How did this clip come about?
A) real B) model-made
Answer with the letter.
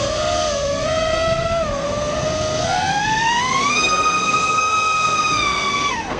B